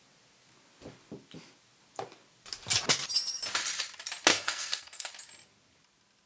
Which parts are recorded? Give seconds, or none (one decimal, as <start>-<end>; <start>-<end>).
0.0-4.3; 5.1-6.3